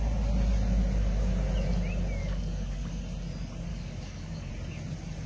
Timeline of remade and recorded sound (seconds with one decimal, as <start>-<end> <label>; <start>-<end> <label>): 0.0-2.2 recorded; 2.2-3.0 remade; 3.0-3.7 recorded; 3.7-4.5 remade; 4.5-5.3 recorded